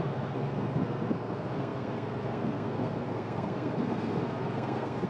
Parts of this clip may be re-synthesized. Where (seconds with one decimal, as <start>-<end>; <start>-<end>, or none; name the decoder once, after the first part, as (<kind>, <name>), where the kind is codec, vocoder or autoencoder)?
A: 0.0-5.1 (codec, SNAC)